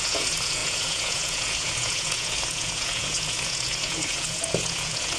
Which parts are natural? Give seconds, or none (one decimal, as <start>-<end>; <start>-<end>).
none